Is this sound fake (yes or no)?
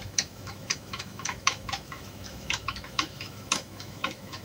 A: yes